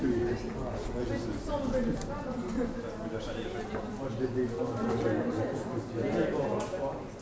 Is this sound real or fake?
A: real